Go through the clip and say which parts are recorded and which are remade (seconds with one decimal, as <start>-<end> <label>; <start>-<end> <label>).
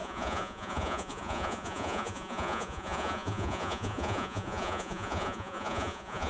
0.0-6.3 remade